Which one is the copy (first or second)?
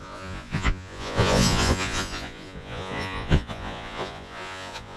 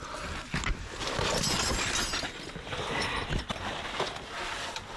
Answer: first